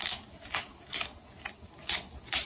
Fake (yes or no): no